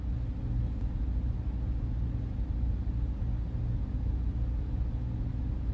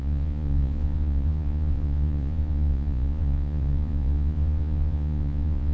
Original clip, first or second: first